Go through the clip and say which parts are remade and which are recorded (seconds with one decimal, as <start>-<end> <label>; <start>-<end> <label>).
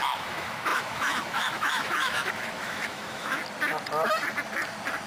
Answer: 0.0-3.4 remade; 3.4-5.1 recorded